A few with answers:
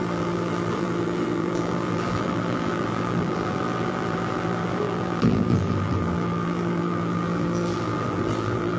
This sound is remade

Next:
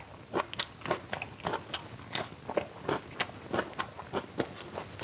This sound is recorded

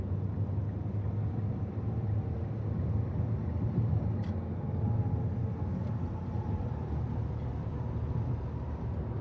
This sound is recorded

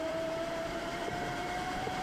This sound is remade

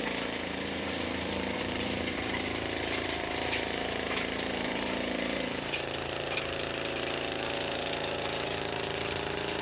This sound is remade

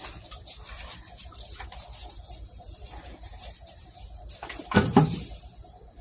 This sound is remade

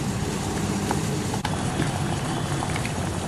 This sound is remade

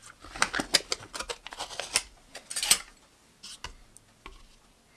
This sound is recorded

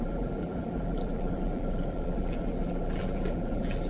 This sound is remade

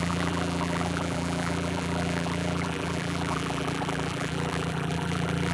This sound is remade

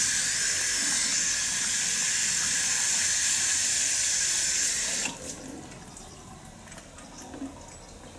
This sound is recorded